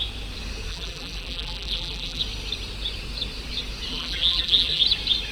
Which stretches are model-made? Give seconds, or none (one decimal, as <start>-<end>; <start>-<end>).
0.7-2.2; 3.9-4.8